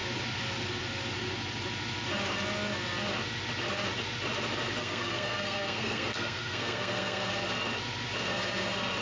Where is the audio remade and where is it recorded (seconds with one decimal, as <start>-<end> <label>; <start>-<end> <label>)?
0.0-4.8 recorded; 4.8-7.3 remade; 7.3-9.0 recorded